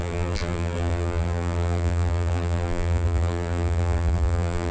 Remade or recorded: remade